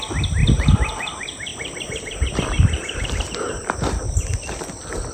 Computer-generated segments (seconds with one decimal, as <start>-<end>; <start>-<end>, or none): 1.5-4.6